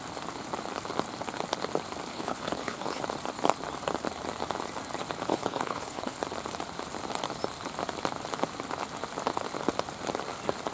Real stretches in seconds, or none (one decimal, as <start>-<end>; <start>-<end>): 0.0-2.1; 3.0-5.3; 6.2-10.7